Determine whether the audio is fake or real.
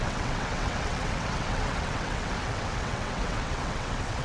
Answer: fake